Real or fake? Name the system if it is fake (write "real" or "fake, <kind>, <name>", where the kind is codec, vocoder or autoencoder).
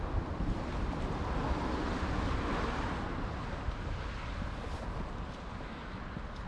real